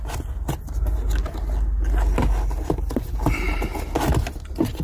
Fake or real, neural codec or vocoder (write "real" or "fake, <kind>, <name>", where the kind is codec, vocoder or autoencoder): real